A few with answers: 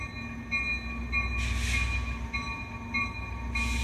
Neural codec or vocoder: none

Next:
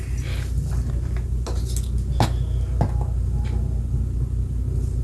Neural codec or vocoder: none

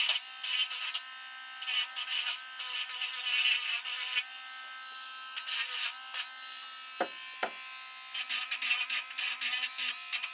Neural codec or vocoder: none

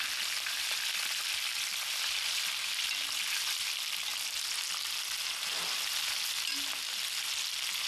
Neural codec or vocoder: none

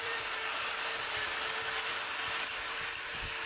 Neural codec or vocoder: vocoder, BigVGAN v2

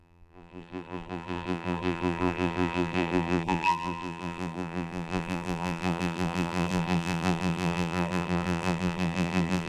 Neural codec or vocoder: vocoder, BigVGAN v2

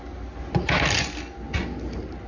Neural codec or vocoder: none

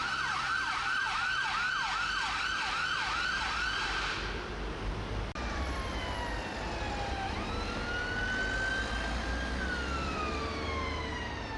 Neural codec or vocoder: none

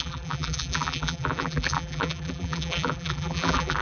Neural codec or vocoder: vocoder, BigVGAN v2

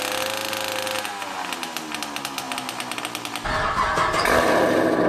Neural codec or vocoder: none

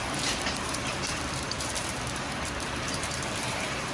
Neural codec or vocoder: vocoder, BigVGAN v2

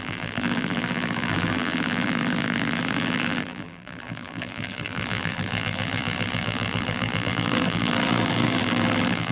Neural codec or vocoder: vocoder, BigVGAN v2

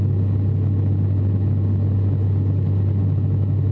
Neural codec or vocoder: none